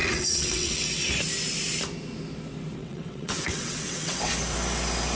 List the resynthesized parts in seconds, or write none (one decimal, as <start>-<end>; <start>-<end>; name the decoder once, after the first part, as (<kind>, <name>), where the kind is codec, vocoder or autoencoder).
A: 0.0-1.1 (vocoder, WaveNeXt); 2.8-4.3